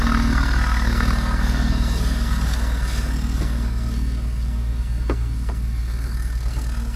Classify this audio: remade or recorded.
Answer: remade